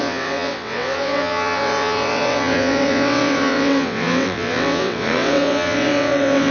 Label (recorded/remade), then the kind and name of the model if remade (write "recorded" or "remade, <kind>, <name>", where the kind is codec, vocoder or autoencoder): remade, vocoder, WaveNeXt